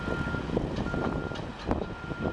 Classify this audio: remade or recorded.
recorded